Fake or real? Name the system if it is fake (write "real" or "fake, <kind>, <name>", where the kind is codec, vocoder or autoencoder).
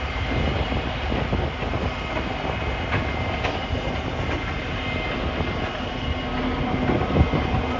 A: real